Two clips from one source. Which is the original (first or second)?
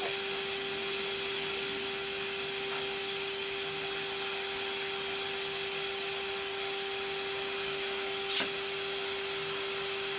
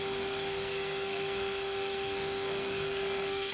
first